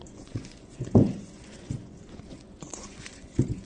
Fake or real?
fake